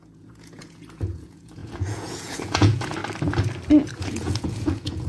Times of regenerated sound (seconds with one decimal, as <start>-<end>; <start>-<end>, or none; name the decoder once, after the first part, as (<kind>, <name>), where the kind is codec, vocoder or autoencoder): 0.0-3.0 (vocoder, Vocos); 4.0-5.1